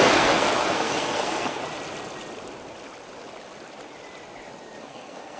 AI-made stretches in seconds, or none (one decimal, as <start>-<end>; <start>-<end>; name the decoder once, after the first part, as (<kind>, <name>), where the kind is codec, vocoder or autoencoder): 0.0-1.6 (codec, SNAC); 4.8-5.4